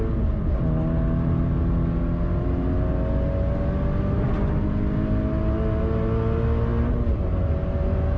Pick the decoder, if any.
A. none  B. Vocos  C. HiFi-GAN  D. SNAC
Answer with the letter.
A